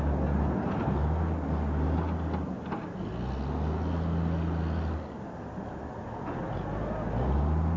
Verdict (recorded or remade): recorded